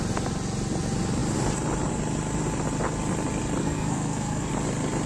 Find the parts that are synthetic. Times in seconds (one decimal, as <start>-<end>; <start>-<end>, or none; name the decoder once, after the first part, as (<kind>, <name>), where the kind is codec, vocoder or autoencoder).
3.6-4.5 (codec, SNAC)